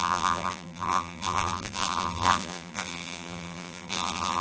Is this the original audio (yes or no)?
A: no